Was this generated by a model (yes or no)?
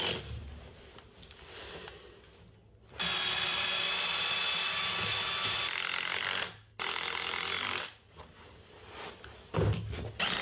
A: no